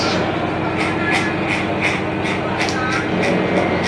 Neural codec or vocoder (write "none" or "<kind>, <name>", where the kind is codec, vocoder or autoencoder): none